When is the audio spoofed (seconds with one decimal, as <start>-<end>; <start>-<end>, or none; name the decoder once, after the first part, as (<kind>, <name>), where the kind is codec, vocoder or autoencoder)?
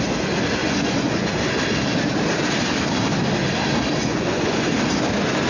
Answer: 0.6-1.3 (vocoder, Vocos); 4.0-4.7